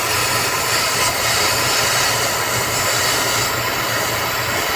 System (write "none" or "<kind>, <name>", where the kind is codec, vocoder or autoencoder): none